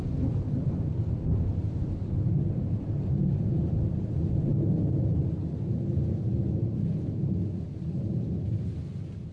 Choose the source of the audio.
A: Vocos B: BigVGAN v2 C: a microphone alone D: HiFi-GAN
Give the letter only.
C